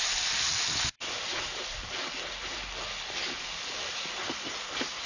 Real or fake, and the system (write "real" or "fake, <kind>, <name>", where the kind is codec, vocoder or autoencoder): real